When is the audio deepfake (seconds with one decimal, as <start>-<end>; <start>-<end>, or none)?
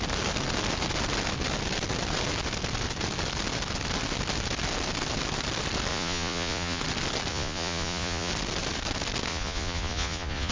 5.9-6.8; 7.3-8.3; 9.3-10.5